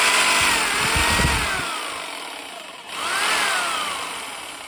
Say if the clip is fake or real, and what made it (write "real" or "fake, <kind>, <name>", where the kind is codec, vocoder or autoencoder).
real